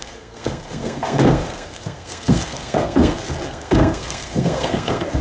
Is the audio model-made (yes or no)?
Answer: yes